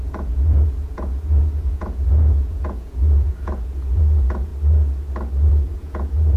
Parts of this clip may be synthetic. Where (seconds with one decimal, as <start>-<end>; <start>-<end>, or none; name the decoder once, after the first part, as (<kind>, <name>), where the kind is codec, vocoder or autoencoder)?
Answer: 0.0-4.5 (vocoder, Vocos); 5.5-6.4